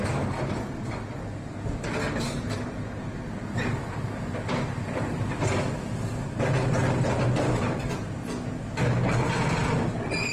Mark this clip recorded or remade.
recorded